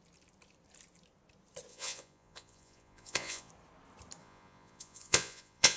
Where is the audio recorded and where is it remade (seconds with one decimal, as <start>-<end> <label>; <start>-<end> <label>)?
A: 0.0-1.7 recorded; 1.7-3.5 remade; 3.5-4.2 recorded; 4.2-5.8 remade

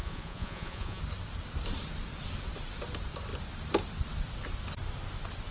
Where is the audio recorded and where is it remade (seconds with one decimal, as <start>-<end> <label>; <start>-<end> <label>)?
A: 0.0-1.0 remade; 1.0-5.5 recorded

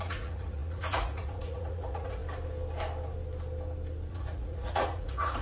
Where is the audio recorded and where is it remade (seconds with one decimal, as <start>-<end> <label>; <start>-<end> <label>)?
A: 0.0-2.2 remade; 2.2-4.1 recorded; 4.1-5.4 remade

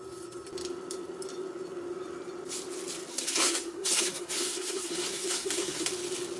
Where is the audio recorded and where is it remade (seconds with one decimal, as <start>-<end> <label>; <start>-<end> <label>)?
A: 0.0-3.1 recorded; 3.1-5.9 remade; 5.9-6.4 recorded

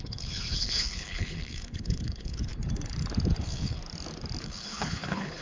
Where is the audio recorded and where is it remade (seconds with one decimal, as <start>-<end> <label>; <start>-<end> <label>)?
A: 0.0-2.5 remade; 2.5-3.4 recorded; 3.4-3.8 remade; 3.8-4.4 recorded; 4.4-5.4 remade

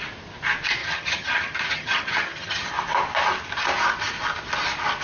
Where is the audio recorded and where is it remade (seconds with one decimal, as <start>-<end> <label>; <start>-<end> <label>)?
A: 0.0-0.8 recorded; 0.8-2.7 remade; 2.7-5.0 recorded

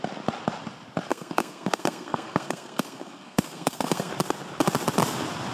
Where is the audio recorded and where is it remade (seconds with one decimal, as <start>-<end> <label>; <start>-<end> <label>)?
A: 0.0-1.1 recorded; 1.1-4.1 remade; 4.1-5.5 recorded